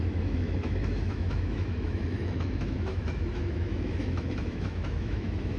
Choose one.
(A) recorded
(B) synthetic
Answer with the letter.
B